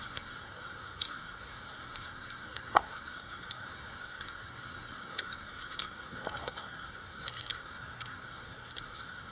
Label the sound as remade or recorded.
remade